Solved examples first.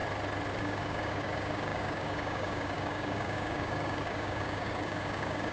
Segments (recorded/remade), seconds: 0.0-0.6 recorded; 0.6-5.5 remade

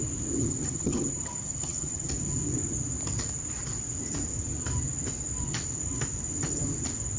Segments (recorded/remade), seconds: 0.0-0.4 recorded; 0.4-2.1 remade; 2.1-7.2 recorded